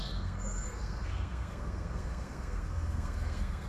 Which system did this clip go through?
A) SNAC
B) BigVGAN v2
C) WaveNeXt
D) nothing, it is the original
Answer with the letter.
A